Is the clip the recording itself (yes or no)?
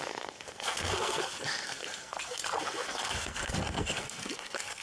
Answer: no